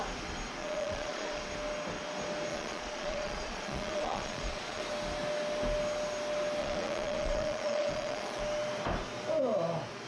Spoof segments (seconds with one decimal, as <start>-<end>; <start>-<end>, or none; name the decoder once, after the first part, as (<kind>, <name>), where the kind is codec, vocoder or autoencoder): 0.6-1.4 (vocoder, Vocos); 2.5-4.8; 6.6-8.4